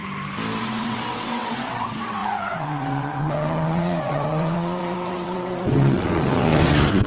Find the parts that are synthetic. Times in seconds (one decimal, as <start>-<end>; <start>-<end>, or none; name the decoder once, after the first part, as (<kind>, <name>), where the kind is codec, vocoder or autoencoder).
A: 0.6-7.1 (vocoder, WaveNeXt)